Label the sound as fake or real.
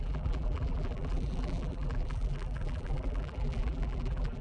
fake